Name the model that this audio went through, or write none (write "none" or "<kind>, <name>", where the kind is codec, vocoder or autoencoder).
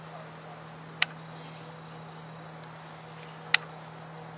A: none